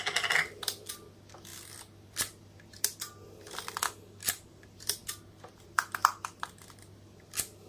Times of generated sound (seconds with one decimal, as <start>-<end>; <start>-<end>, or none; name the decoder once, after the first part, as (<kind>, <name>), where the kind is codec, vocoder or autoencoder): none